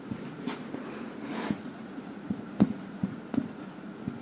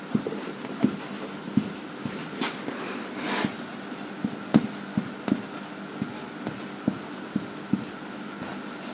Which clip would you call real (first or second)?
second